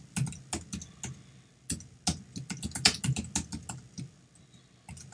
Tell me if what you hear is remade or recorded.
recorded